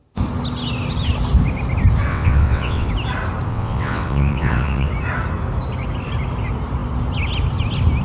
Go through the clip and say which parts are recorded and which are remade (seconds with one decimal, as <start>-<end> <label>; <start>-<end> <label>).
0.0-2.1 recorded; 2.1-2.9 remade; 2.9-3.5 recorded; 3.5-4.9 remade; 4.9-8.0 recorded